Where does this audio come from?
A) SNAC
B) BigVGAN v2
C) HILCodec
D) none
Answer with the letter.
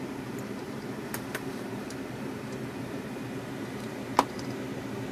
B